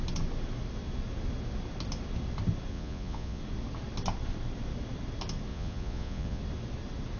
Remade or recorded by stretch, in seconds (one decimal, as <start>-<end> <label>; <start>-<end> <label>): 0.0-2.7 recorded; 2.7-3.4 remade; 3.4-5.5 recorded; 5.5-6.4 remade; 6.4-7.2 recorded